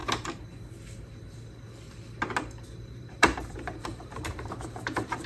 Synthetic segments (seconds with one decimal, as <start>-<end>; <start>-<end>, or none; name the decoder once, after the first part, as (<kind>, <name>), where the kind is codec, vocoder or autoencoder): 2.9-5.3 (vocoder, BigVGAN v2)